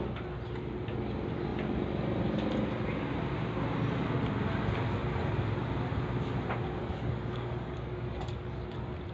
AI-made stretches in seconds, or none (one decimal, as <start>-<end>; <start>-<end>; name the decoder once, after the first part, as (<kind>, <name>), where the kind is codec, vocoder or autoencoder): 6.8-8.5 (codec, DAC)